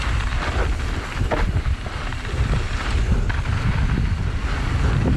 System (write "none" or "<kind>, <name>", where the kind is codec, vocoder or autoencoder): none